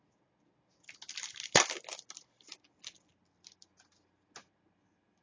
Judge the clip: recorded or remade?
recorded